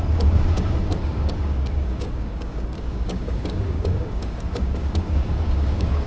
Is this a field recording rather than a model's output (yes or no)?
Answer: no